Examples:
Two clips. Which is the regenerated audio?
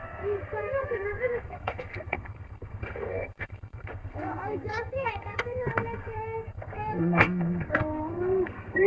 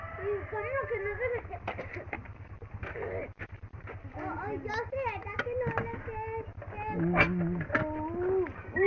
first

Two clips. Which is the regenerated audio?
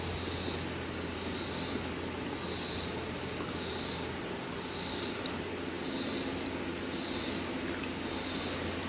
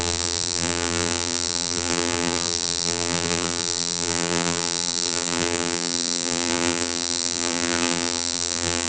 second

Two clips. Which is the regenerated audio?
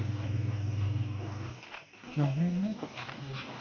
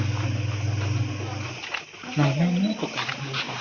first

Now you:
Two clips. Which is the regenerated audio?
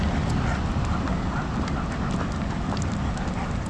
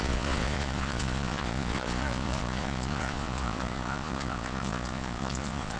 second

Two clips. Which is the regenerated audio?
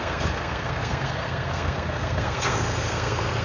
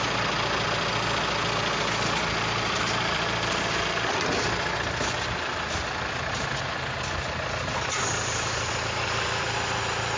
first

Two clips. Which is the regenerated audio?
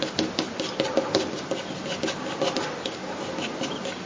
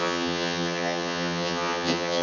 second